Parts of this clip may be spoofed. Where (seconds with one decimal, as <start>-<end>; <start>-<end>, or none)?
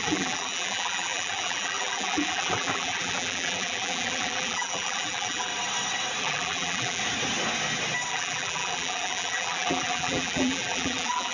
0.0-5.5; 6.2-7.0; 8.1-11.3